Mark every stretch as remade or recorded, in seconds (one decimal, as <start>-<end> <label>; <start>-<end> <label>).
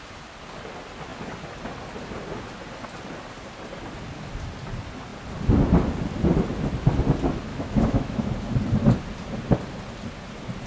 0.0-7.5 recorded; 7.5-8.3 remade; 8.3-10.7 recorded